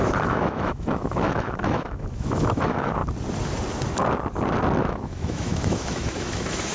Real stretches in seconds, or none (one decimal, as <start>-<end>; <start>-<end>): 3.0-4.8